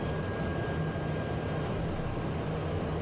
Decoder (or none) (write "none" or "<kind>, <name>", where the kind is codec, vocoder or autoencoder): none